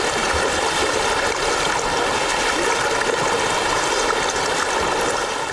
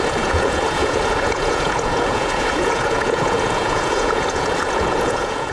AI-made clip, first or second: second